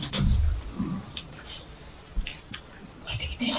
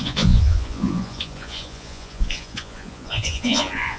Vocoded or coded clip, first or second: second